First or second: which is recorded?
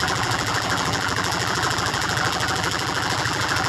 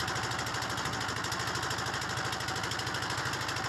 second